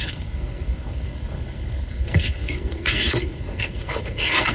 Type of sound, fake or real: fake